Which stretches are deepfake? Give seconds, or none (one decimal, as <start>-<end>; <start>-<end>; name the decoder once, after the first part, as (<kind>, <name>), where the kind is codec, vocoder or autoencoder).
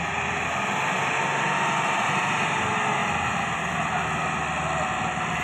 none